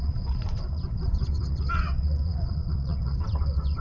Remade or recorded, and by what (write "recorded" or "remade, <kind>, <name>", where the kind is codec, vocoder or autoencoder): remade, vocoder, WaveNeXt